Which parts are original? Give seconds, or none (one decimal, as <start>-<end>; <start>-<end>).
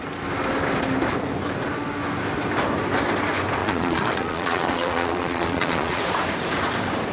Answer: 0.0-3.6; 6.0-7.1